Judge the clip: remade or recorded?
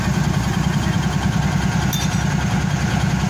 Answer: recorded